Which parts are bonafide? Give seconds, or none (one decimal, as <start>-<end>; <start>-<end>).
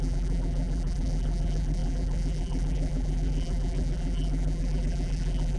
none